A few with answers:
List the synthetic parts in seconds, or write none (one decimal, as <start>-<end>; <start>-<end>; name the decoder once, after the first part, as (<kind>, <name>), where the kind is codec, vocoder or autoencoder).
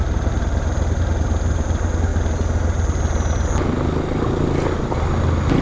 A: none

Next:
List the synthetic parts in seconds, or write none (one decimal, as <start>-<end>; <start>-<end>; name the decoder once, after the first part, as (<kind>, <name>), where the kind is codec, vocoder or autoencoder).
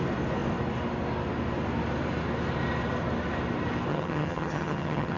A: 3.9-5.2 (vocoder, HiFi-GAN)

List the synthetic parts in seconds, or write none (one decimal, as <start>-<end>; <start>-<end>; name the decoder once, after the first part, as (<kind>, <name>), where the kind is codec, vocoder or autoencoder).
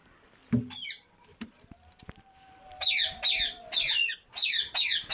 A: 1.3-4.3 (vocoder, BigVGAN v2)